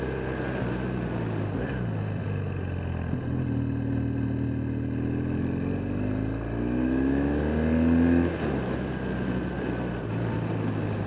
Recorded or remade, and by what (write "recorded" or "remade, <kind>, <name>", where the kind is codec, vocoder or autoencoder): recorded